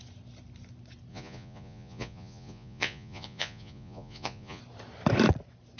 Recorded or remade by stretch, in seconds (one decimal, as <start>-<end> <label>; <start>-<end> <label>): 0.0-1.1 recorded; 1.1-4.6 remade; 4.6-5.8 recorded